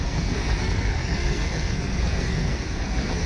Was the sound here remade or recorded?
remade